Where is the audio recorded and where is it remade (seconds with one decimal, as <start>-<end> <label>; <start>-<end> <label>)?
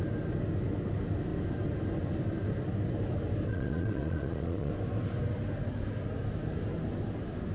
0.0-3.5 recorded; 3.5-4.7 remade; 4.7-7.5 recorded